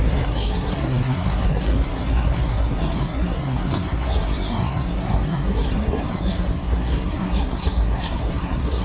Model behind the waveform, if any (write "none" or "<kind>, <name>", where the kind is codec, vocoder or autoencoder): codec, SNAC